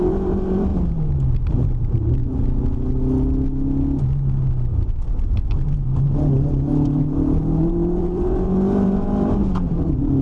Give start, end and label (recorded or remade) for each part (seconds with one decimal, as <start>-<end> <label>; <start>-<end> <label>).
0.0-0.7 remade; 0.7-1.3 recorded; 1.3-2.2 remade; 2.2-5.1 recorded; 5.1-10.2 remade